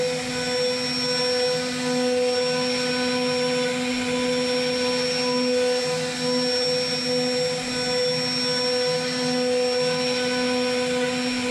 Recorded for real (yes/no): yes